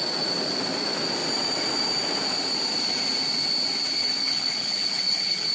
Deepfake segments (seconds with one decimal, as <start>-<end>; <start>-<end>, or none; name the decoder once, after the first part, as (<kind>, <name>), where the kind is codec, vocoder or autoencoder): 4.0-5.5 (codec, HILCodec)

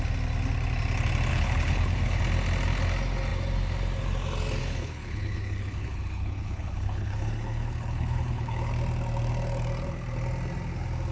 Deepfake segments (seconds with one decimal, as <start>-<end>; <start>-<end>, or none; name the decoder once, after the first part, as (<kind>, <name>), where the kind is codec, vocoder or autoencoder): 1.3-2.2 (codec, HILCodec); 4.6-8.7

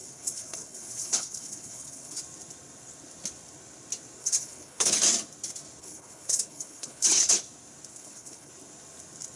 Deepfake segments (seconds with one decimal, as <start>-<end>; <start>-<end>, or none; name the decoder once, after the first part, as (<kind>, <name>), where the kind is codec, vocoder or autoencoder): 0.0-2.2 (codec, HILCodec); 4.2-5.0; 5.8-7.4; 7.9-8.5